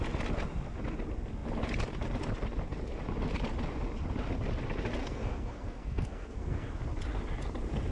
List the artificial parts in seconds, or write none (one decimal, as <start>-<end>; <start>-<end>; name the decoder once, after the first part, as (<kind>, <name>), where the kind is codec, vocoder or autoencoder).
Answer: 5.0-6.7 (codec, SNAC)